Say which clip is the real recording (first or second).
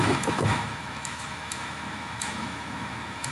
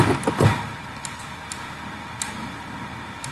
second